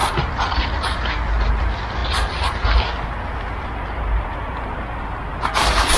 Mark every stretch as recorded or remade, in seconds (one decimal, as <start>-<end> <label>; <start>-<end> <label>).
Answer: 0.0-6.0 recorded